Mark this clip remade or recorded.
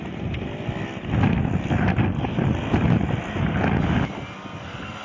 recorded